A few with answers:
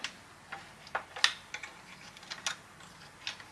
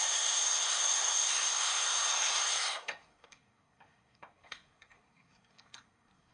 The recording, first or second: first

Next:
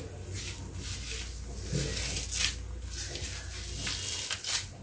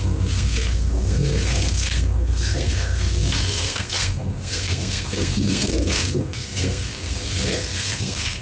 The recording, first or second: first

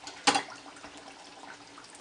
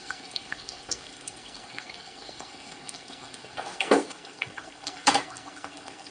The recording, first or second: first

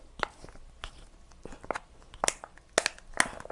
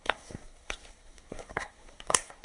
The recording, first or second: first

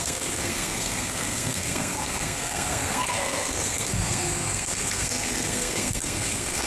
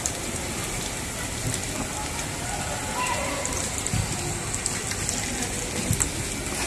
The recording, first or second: second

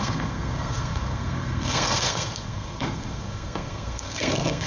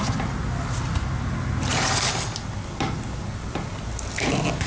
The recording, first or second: second